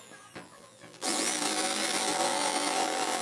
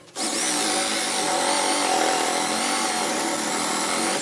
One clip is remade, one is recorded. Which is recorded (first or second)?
second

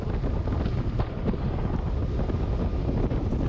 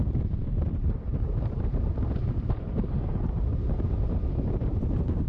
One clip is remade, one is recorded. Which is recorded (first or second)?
first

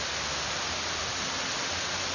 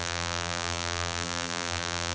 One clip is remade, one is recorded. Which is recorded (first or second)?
first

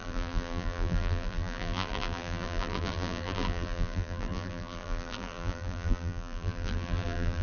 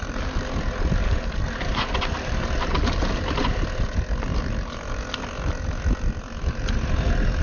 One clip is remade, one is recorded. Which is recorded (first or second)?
second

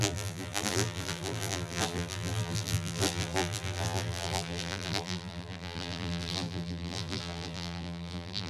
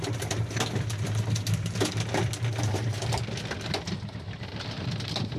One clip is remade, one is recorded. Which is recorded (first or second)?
second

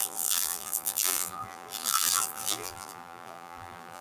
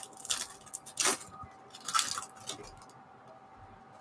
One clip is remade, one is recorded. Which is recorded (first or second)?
second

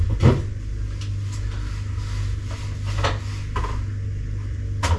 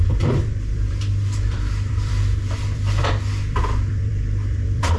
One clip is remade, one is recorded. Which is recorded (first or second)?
first